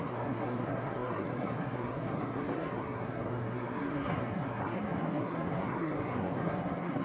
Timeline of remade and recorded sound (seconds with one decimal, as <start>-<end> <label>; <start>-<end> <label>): 0.0-7.0 remade